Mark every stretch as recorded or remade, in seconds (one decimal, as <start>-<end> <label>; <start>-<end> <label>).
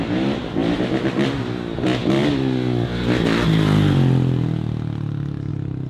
0.0-5.9 recorded